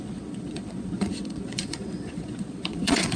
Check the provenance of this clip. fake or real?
fake